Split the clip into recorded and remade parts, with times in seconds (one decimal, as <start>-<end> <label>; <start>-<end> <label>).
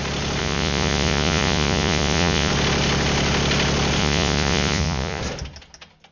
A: 0.0-0.4 recorded; 0.4-2.5 remade; 2.5-4.0 recorded; 4.0-5.2 remade; 5.2-6.1 recorded